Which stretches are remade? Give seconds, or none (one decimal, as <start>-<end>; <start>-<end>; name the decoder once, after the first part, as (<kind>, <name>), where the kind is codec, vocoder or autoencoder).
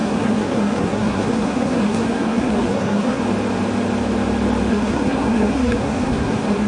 0.0-3.2 (codec, SNAC); 4.7-6.7